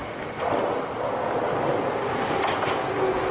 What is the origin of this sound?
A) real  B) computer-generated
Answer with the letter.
A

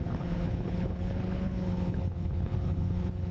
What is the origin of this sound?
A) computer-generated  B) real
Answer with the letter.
A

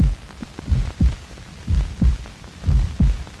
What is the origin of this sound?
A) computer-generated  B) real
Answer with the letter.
B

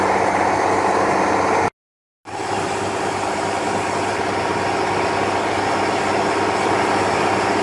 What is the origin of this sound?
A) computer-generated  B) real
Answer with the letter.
B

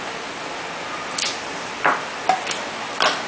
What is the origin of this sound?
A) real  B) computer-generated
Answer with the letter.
A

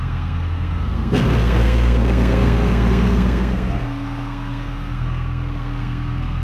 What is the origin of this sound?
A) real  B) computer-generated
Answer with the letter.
B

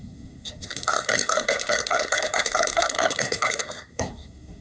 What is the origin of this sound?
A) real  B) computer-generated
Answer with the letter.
B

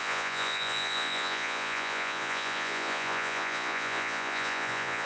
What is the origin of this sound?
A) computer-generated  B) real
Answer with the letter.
A